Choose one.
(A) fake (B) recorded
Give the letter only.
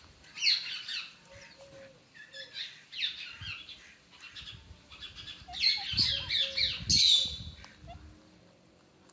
B